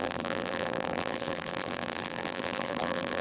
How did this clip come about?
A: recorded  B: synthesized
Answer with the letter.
B